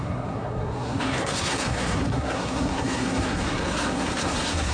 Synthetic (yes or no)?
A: yes